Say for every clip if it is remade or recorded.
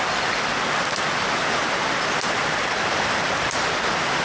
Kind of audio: recorded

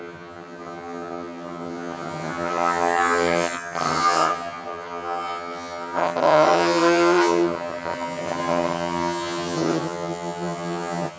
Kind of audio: remade